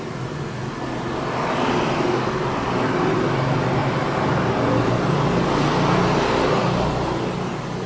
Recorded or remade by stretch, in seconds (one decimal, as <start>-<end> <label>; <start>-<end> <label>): 0.0-7.9 recorded